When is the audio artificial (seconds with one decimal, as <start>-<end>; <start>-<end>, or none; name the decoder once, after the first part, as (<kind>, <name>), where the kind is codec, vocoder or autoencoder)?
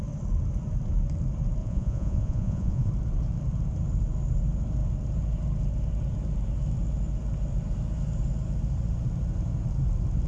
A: 1.6-2.9 (vocoder, Vocos)